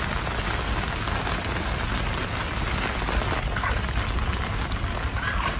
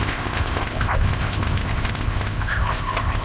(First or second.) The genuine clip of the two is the first